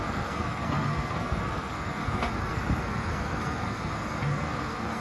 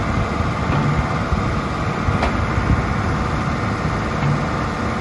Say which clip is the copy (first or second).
first